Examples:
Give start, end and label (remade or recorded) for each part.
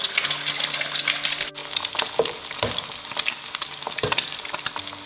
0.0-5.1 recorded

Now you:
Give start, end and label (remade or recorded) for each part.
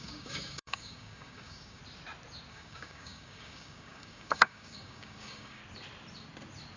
0.0-1.8 remade; 1.8-2.5 recorded; 2.5-5.6 remade; 5.6-6.8 recorded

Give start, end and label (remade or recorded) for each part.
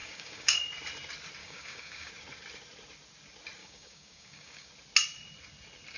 0.0-0.6 remade; 0.6-1.4 recorded; 1.4-2.1 remade; 2.1-3.6 recorded; 3.6-4.7 remade; 4.7-6.0 recorded